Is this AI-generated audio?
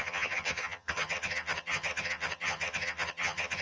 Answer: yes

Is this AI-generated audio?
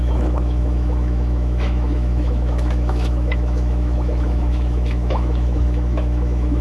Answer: yes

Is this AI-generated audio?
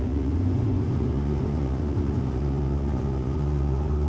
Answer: yes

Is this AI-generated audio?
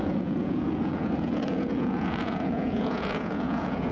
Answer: yes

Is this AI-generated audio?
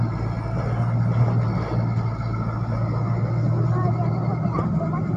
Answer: no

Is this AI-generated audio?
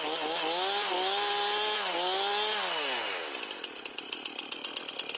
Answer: no